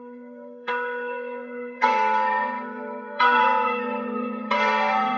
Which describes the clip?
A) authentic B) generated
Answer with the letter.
B